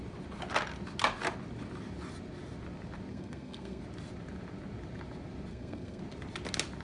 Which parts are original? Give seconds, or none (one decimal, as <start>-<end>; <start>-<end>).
0.0-3.1; 3.8-5.5; 6.0-6.8